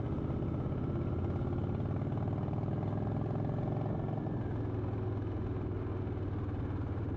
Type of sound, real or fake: real